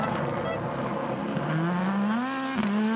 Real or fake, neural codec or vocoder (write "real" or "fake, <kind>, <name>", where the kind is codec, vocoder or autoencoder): real